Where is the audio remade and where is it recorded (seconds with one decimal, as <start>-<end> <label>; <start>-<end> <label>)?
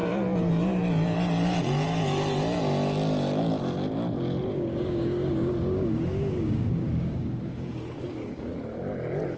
0.0-4.5 recorded; 4.5-8.5 remade; 8.5-9.4 recorded